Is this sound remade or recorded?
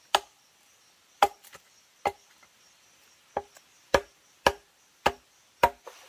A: recorded